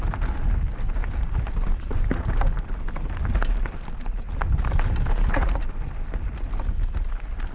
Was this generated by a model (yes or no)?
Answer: no